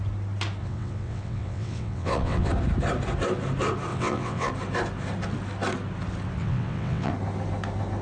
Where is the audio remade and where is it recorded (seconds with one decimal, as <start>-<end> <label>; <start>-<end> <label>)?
0.0-0.6 recorded; 0.6-2.5 remade; 2.5-3.9 recorded; 3.9-4.5 remade; 4.5-6.4 recorded; 6.4-7.1 remade; 7.1-8.0 recorded